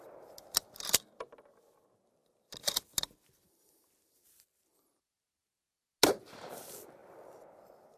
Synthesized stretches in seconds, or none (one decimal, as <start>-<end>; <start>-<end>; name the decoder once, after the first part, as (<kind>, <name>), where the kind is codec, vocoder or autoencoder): none